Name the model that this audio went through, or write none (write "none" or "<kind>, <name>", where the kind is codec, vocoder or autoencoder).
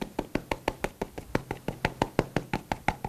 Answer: none